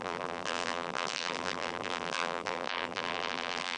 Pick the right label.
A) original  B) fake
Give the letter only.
B